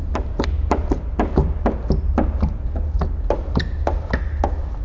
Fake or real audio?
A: real